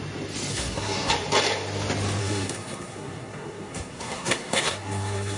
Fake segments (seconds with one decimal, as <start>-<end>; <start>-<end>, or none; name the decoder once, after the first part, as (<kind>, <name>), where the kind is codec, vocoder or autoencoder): 0.5-1.1 (codec, SNAC); 2.2-5.4